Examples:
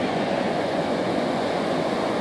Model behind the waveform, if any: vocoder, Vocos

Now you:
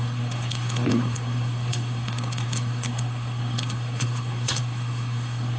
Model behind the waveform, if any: codec, SNAC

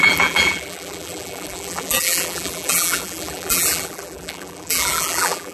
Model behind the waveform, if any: vocoder, BigVGAN v2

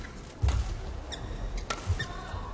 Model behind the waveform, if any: none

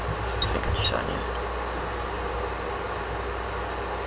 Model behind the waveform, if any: none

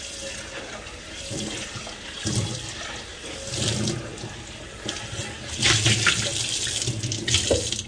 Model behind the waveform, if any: none